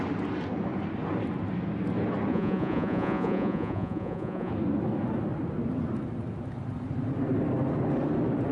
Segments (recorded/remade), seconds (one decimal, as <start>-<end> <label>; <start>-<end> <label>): 0.0-2.3 recorded; 2.3-4.5 remade; 4.5-8.5 recorded